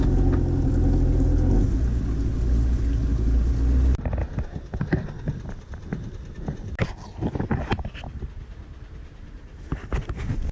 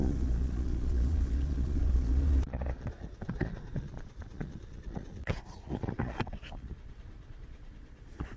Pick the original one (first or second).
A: first